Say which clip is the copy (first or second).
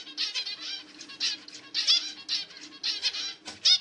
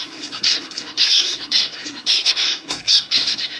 second